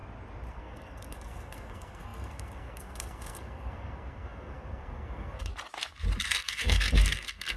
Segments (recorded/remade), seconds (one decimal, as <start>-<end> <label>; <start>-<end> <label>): 0.0-0.5 recorded; 0.5-5.5 remade; 5.5-6.2 recorded; 6.2-7.6 remade